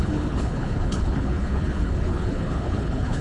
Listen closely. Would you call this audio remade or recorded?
remade